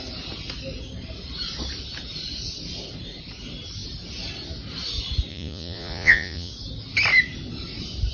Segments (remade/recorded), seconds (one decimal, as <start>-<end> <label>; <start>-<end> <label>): 0.0-5.3 recorded; 5.3-6.5 remade; 6.5-8.1 recorded